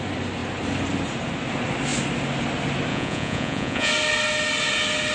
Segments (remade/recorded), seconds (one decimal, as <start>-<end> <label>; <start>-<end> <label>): 0.0-2.9 recorded; 2.9-3.9 remade; 3.9-5.1 recorded